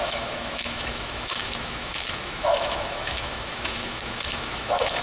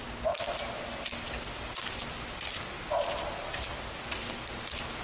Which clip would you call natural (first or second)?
second